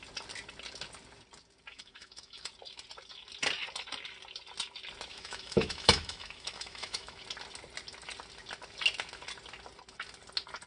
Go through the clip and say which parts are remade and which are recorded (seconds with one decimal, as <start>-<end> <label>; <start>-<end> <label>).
0.0-1.7 recorded; 1.7-2.5 remade; 2.5-5.1 recorded; 5.1-7.2 remade; 7.2-10.7 recorded